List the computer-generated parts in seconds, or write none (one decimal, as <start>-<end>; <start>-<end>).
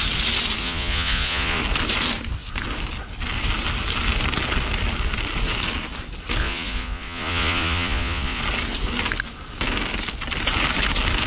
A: 0.6-1.6; 6.4-8.4